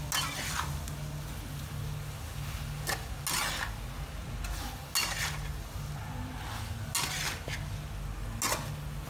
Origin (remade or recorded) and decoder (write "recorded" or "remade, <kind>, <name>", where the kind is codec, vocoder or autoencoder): recorded